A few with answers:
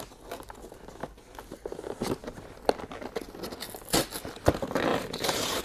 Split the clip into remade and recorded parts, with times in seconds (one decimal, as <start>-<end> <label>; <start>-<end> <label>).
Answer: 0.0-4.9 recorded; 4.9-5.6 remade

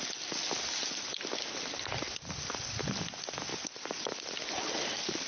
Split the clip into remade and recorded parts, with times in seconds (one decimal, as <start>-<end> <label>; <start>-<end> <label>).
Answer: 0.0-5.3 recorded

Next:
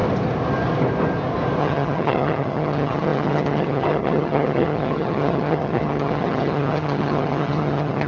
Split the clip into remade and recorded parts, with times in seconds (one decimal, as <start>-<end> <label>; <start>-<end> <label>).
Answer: 0.0-1.6 recorded; 1.6-8.1 remade

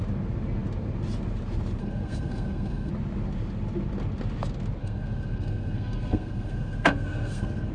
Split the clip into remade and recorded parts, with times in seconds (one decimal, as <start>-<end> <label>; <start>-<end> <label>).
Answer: 0.0-1.8 recorded; 1.8-2.9 remade; 2.9-4.8 recorded; 4.8-7.7 remade

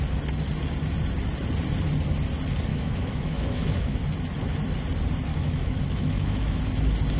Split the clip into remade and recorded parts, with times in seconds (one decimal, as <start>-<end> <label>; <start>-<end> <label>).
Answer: 0.0-2.7 recorded; 2.7-4.0 remade; 4.0-5.3 recorded; 5.3-6.6 remade; 6.6-7.2 recorded